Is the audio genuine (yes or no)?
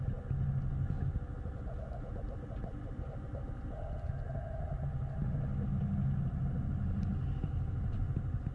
yes